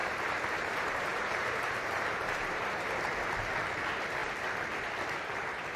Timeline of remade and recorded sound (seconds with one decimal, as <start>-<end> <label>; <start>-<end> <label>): 0.0-2.9 remade; 2.9-5.8 recorded